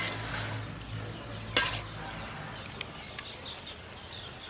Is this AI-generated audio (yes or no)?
no